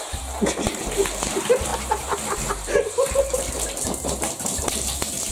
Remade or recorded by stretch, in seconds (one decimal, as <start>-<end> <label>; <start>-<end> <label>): 0.0-5.3 remade